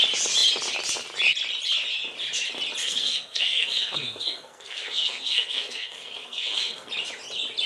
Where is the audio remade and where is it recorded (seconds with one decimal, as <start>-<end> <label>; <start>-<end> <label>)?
0.0-2.8 recorded; 2.8-6.9 remade; 6.9-7.7 recorded